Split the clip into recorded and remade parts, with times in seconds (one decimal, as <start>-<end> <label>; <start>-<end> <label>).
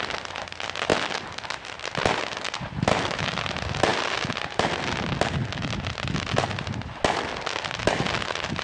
0.0-8.6 recorded